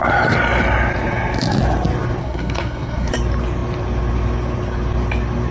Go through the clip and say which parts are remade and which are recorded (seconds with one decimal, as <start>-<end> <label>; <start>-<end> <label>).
0.0-2.2 recorded; 2.2-3.1 remade; 3.1-5.5 recorded